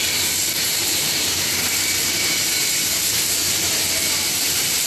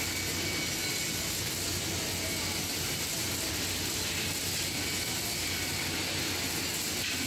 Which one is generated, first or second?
first